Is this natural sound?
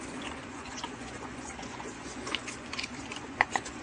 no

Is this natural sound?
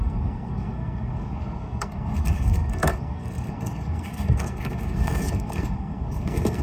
no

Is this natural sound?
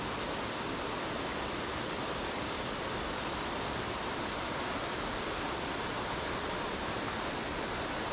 yes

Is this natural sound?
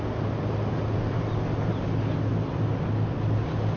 yes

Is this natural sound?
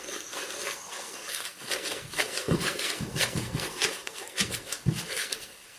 no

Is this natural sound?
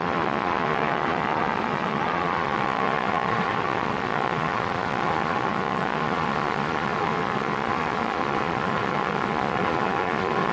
no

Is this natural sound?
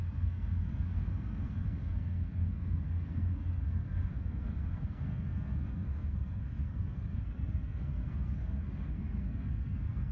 no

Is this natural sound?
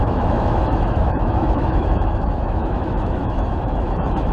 no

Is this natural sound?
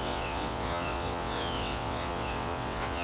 no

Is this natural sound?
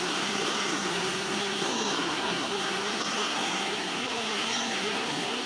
no